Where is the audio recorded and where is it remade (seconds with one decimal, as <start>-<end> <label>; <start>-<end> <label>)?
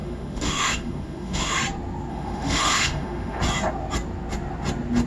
0.0-1.6 remade; 1.6-2.1 recorded; 2.1-3.4 remade; 3.4-5.1 recorded